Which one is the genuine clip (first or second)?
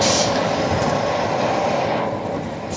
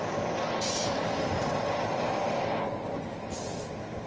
second